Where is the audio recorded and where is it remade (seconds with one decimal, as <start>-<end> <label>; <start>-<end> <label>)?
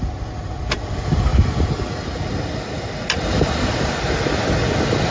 0.0-5.1 recorded